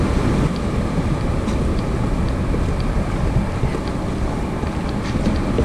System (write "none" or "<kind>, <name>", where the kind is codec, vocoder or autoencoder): none